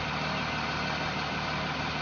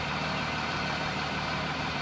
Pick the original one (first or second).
first